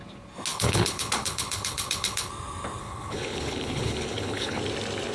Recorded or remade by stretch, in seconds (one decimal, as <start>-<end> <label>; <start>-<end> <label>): 0.0-0.5 recorded; 0.5-2.3 remade; 2.3-2.8 recorded; 2.8-4.6 remade; 4.6-5.1 recorded

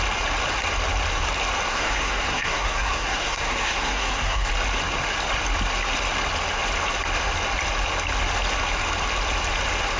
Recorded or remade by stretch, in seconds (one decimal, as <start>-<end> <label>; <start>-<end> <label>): 0.0-1.7 recorded; 1.7-4.5 remade; 4.5-10.0 recorded

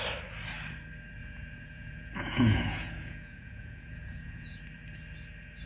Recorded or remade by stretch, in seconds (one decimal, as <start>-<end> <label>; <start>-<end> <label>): 0.0-1.2 recorded; 1.2-4.6 remade; 4.6-5.7 recorded

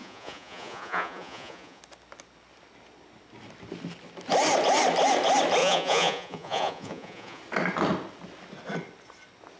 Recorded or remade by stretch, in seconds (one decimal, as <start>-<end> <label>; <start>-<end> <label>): 0.0-1.8 remade; 1.8-5.6 recorded; 5.6-7.4 remade; 7.4-9.6 recorded

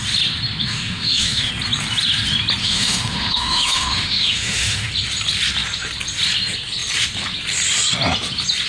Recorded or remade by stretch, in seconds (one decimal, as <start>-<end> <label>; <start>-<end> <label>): 0.0-0.6 recorded; 0.6-1.5 remade; 1.5-2.6 recorded; 2.6-4.9 remade; 4.9-8.7 recorded

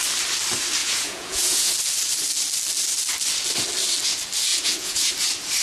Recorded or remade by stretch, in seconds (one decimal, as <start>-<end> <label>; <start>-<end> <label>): 0.0-0.8 recorded; 0.8-1.7 remade; 1.7-4.5 recorded; 4.5-5.1 remade; 5.1-5.6 recorded

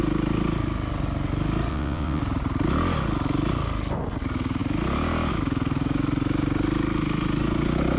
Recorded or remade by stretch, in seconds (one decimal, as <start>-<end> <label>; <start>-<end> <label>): 0.0-1.7 recorded; 1.7-2.2 remade; 2.2-8.0 recorded